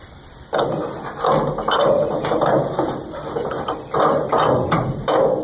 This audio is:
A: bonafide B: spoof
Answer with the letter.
B